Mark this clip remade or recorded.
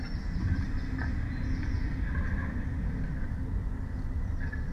recorded